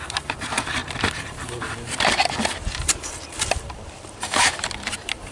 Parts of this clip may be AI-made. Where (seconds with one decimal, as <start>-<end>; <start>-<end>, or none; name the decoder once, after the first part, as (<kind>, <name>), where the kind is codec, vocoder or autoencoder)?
none